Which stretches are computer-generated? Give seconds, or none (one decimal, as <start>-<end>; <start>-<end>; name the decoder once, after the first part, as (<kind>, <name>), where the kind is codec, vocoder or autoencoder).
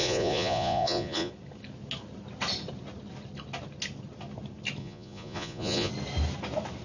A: 0.0-1.3 (vocoder, Vocos); 4.8-5.9